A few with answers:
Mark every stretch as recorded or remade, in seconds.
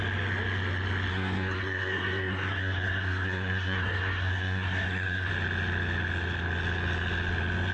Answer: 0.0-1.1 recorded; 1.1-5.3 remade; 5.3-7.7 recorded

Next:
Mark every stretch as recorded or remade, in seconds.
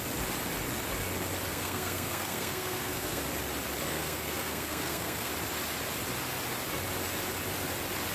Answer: 0.0-1.5 recorded; 1.5-3.2 remade; 3.2-3.9 recorded; 3.9-5.3 remade; 5.3-8.1 recorded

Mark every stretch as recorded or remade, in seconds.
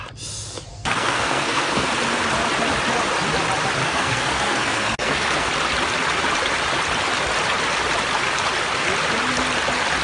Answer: 0.0-0.7 recorded; 0.7-1.9 remade; 1.9-3.8 recorded; 3.8-5.5 remade; 5.5-10.0 recorded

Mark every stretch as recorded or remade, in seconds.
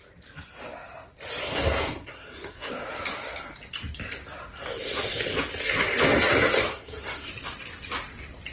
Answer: 0.0-1.4 recorded; 1.4-2.7 remade; 2.7-6.7 recorded; 6.7-7.3 remade; 7.3-8.5 recorded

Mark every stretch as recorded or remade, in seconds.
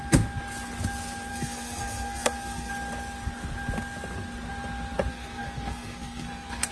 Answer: 0.0-1.3 recorded; 1.3-2.7 remade; 2.7-5.1 recorded; 5.1-6.7 remade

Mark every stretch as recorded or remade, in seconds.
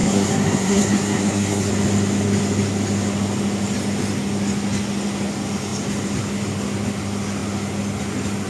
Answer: 0.0-1.7 remade; 1.7-8.5 recorded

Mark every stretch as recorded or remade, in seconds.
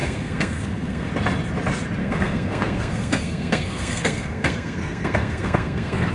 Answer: 0.0-1.1 remade; 1.1-2.0 recorded; 2.0-6.1 remade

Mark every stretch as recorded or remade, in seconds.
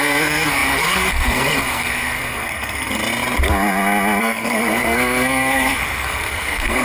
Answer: 0.0-3.0 remade; 3.0-4.2 recorded; 4.2-6.8 remade